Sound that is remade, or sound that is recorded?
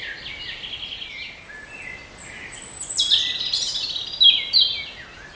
recorded